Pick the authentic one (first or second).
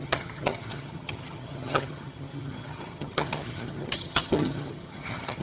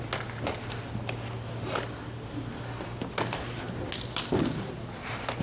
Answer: second